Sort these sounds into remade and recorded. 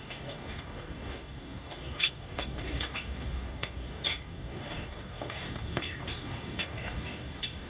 remade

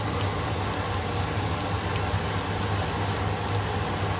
recorded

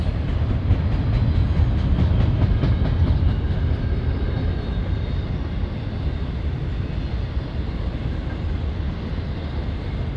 recorded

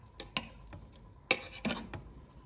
recorded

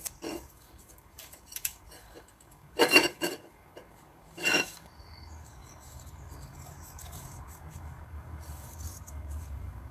remade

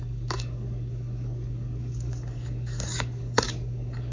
remade